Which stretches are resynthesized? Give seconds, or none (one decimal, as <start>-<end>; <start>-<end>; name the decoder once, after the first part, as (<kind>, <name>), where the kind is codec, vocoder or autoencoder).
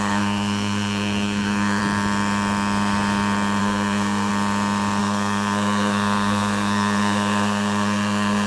0.0-1.8 (codec, SNAC); 3.6-4.3; 5.0-8.5